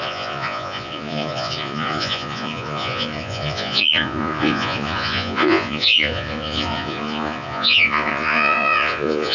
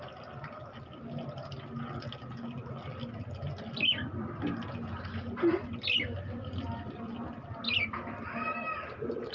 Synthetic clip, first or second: first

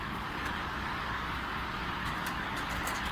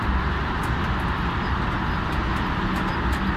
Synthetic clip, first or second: first